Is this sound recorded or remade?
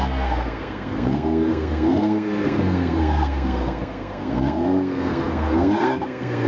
remade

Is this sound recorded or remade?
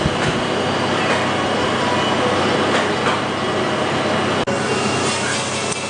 recorded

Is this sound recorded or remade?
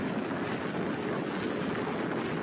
recorded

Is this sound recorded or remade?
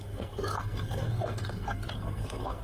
remade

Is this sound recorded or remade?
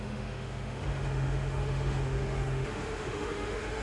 remade